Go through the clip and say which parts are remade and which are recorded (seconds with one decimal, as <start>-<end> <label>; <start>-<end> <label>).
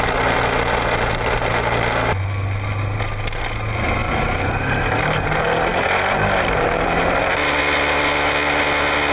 0.0-9.1 recorded